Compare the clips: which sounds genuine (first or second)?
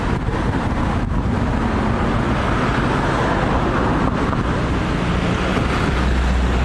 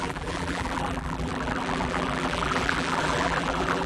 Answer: first